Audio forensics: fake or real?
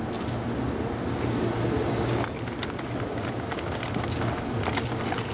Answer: real